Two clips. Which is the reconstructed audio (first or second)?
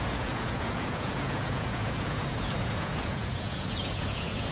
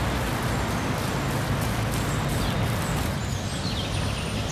first